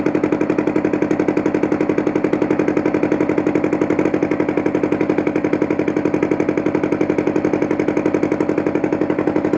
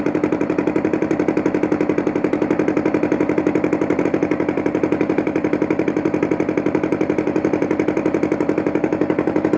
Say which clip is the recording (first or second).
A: first